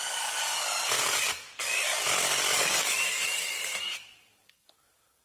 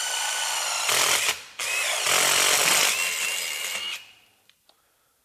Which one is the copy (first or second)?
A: first